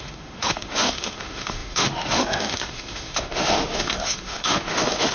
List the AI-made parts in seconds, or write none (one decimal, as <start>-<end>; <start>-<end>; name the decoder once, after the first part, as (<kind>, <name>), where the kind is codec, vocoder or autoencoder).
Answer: 0.0-5.1 (autoencoder, DAC-VAE)